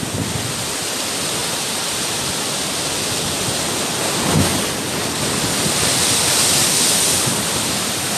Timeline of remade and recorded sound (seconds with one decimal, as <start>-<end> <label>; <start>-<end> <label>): 0.0-1.4 recorded; 1.4-2.2 remade; 2.2-8.2 recorded